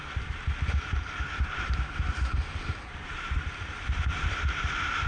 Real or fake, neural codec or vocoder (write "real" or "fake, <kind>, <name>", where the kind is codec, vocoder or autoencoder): fake, vocoder, BigVGAN v2